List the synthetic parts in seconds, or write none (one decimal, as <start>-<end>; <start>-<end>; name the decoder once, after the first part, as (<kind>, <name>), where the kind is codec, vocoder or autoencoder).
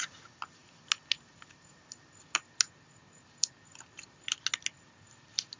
none